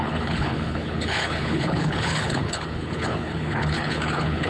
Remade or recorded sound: remade